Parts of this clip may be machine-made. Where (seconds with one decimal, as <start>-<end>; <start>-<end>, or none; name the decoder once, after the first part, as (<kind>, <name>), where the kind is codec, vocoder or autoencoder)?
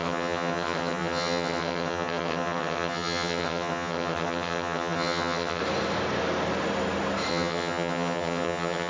0.0-5.6 (vocoder, HiFi-GAN); 7.3-8.9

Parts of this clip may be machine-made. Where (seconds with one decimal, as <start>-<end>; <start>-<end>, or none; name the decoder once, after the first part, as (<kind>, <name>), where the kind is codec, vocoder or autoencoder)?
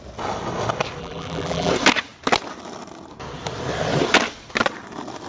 1.0-1.7 (vocoder, BigVGAN v2)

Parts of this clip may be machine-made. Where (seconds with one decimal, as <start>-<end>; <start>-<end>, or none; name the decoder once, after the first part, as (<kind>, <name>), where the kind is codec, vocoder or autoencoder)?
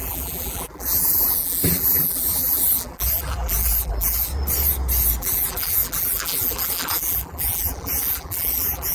0.0-4.3 (vocoder, BigVGAN v2); 5.2-8.9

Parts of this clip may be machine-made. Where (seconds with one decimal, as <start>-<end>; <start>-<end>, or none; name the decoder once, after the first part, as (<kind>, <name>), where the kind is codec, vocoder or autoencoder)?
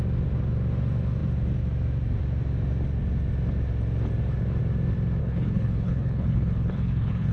5.2-7.3 (codec, HILCodec)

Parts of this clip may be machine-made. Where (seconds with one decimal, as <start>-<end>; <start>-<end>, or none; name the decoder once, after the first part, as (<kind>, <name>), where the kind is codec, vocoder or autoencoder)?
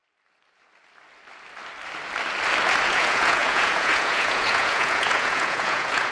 2.9-6.1 (vocoder, Vocos)